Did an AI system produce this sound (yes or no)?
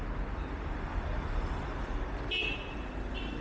no